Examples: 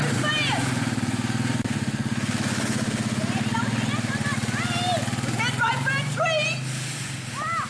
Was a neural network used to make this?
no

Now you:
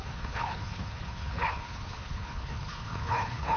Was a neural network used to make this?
yes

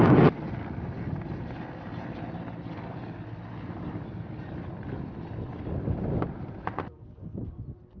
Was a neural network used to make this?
no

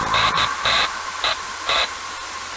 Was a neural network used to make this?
no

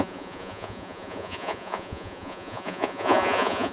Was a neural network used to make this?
yes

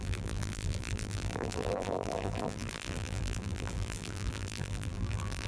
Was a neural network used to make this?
yes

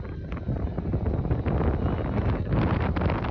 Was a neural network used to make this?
no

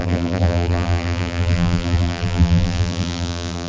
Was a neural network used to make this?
yes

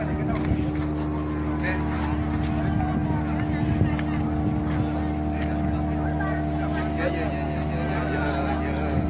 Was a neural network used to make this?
no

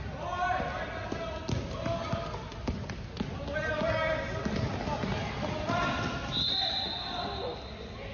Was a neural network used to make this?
no